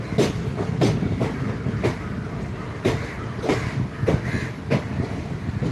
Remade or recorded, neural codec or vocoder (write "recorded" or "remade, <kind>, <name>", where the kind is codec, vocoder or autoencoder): recorded